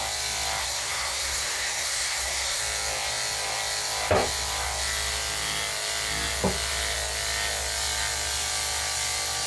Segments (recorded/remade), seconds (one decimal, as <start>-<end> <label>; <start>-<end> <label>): 0.0-0.6 recorded; 0.6-2.6 remade; 2.6-9.5 recorded